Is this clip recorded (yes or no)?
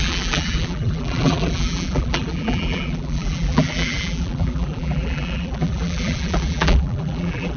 no